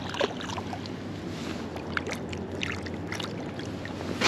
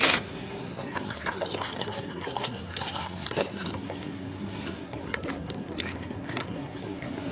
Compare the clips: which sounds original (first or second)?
first